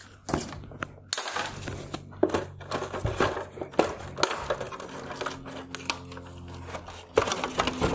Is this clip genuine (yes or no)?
yes